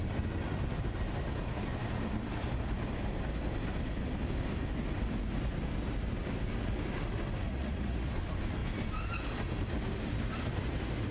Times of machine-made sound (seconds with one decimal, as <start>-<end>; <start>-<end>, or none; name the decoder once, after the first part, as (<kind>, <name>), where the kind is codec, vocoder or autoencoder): 7.5-8.1 (vocoder, Vocos)